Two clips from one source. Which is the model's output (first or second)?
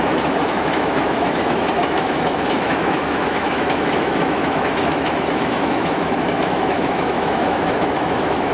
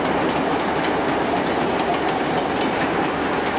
first